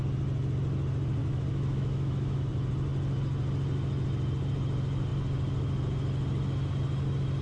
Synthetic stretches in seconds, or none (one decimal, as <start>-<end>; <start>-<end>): 1.2-2.5